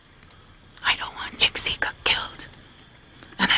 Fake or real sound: real